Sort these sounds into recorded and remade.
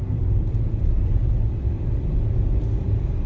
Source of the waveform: recorded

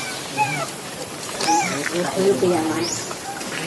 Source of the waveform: remade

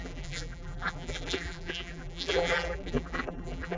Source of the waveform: remade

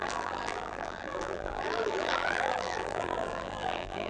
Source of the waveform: remade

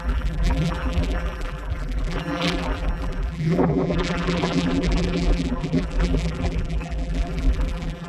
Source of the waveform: remade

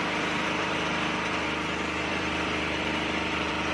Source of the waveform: remade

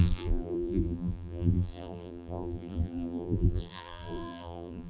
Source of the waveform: remade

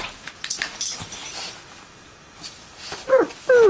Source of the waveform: recorded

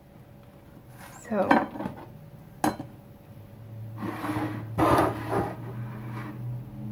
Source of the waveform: recorded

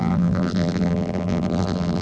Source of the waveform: remade